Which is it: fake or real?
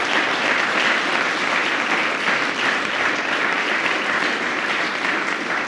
fake